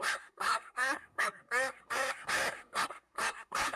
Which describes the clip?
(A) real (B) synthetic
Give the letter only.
B